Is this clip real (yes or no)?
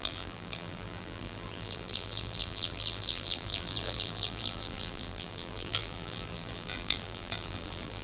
no